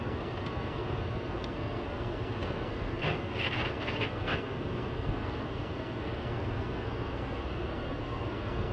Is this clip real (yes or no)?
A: no